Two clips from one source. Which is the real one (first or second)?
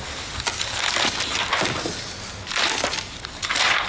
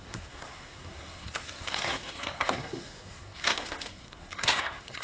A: first